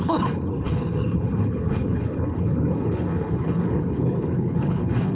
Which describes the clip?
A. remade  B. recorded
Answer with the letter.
A